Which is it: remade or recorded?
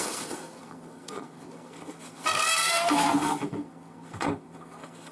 remade